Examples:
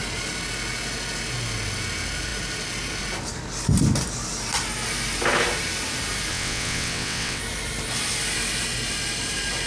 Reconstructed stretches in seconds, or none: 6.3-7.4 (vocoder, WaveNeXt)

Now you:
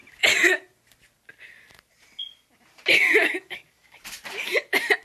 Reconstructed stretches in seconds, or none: 3.2-4.0 (codec, DAC)

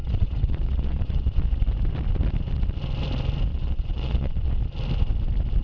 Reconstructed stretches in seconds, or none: 0.0-1.4 (vocoder, Vocos); 3.5-4.6

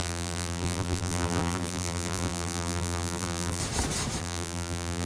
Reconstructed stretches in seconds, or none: 0.0-3.6 (vocoder, BigVGAN v2); 4.2-5.1

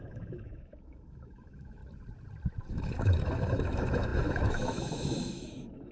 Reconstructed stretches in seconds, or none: 0.0-1.8 (autoencoder, DAC-VAE); 2.7-5.9